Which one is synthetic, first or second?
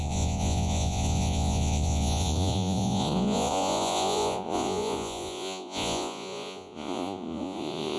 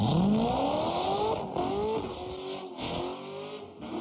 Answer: first